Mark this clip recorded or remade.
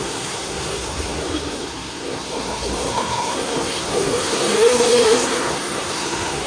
remade